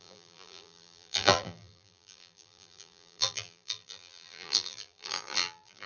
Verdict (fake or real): fake